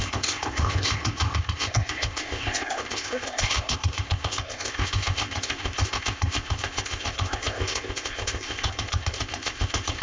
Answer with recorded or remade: remade